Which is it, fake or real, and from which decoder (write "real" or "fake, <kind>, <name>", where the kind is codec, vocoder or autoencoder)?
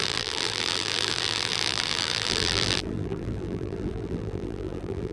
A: fake, vocoder, BigVGAN v2